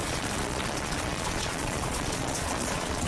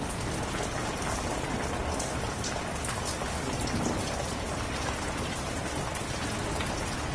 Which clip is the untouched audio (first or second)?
second